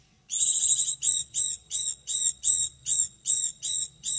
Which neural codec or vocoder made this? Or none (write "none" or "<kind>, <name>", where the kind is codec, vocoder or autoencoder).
vocoder, Vocos